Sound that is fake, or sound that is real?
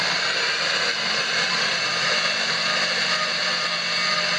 fake